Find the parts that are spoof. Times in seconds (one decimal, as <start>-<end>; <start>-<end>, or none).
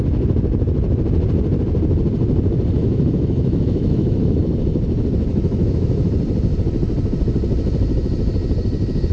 2.8-4.4; 5.3-6.1